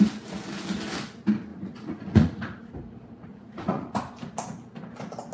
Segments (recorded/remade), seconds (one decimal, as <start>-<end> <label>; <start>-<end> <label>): 0.0-1.5 recorded; 1.5-2.7 remade; 2.7-3.3 recorded; 3.3-4.1 remade; 4.1-5.3 recorded